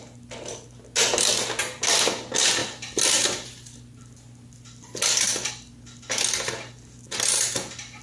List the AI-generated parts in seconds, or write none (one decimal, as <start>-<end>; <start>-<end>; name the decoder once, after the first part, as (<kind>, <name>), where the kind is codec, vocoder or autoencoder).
none